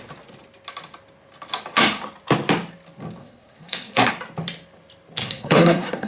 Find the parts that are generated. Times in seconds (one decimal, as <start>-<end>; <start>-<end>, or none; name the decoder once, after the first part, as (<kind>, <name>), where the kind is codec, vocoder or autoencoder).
3.2-4.1 (codec, SNAC); 5.2-6.1